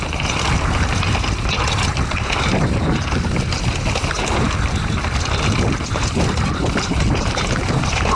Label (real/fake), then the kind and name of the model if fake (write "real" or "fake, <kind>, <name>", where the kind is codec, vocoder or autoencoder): real